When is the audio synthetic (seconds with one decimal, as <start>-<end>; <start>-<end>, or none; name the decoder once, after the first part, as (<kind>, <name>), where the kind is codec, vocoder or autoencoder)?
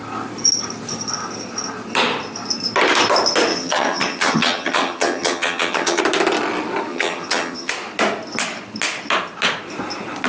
3.5-6.0 (vocoder, HiFi-GAN); 6.9-7.7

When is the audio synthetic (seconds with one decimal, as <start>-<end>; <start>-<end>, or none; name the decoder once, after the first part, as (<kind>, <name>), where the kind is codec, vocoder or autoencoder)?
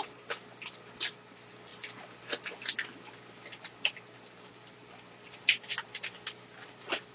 none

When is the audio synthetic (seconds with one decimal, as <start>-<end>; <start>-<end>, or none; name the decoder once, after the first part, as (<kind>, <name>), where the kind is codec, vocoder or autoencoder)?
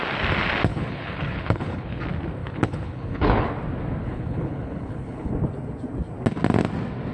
0.7-2.0 (codec, HILCodec); 2.4-3.5; 4.0-5.3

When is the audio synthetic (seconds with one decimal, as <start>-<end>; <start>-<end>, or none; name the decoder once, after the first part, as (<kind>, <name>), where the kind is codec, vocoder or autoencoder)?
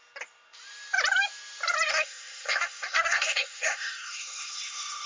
1.9-5.1 (codec, SNAC)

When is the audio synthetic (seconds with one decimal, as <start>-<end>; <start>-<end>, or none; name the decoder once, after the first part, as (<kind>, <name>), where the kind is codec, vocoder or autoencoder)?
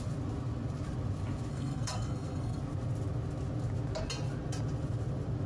1.5-2.6 (codec, SNAC)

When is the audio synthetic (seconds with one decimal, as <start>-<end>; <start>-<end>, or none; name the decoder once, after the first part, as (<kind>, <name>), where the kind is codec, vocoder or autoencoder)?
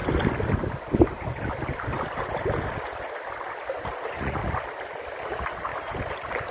3.9-4.4 (vocoder, Vocos); 5.3-5.7